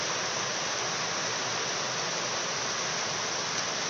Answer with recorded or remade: recorded